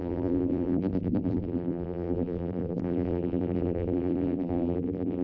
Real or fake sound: fake